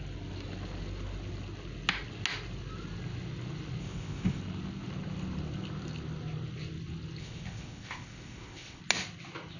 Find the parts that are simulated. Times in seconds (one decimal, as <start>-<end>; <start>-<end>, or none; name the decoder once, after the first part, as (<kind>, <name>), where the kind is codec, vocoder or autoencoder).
3.8-4.4 (codec, ZipCodec); 7.2-8.8